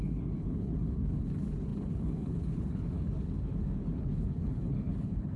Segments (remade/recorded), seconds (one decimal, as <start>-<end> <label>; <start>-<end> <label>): 0.0-5.4 remade

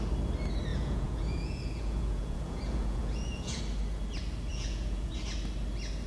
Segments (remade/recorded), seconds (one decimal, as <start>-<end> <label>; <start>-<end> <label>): 0.0-0.7 recorded; 0.7-3.6 remade; 3.6-4.5 recorded; 4.5-5.1 remade; 5.1-6.1 recorded

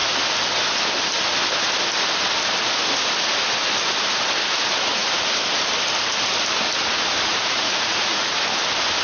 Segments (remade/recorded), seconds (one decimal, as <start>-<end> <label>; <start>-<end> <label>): 0.0-7.3 recorded; 7.3-8.4 remade; 8.4-9.0 recorded